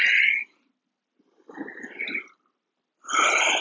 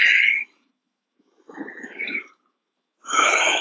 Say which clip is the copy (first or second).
second